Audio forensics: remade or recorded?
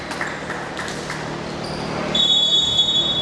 recorded